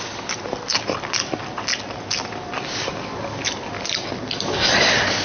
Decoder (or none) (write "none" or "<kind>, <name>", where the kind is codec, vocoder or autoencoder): none